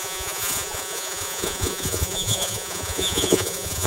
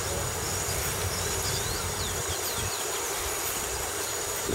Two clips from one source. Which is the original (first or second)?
second